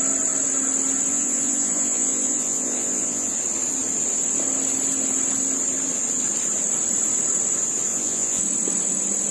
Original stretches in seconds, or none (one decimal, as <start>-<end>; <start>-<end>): 0.0-1.1; 3.3-7.9; 8.4-9.3